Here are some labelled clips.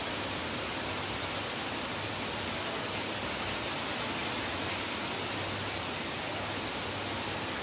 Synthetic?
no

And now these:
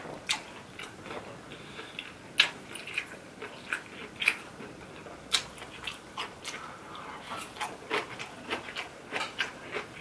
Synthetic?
no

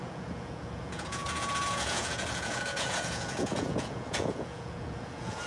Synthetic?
yes